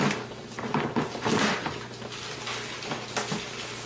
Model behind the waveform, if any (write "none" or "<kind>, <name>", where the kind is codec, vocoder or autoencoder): none